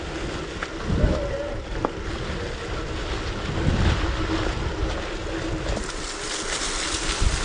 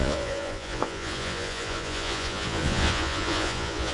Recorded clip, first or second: first